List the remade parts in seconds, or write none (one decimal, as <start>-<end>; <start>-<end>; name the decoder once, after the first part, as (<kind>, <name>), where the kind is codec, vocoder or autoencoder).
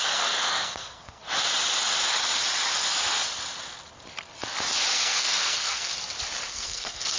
0.0-1.2 (codec, SNAC); 4.9-5.9; 6.5-7.2